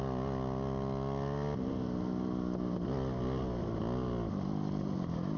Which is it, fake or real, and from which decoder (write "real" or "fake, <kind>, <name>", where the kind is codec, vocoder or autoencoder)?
real